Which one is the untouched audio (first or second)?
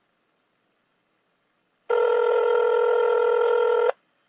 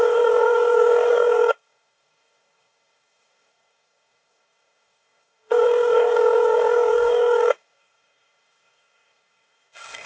first